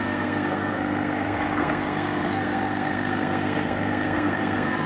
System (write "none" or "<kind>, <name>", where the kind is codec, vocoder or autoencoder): codec, SNAC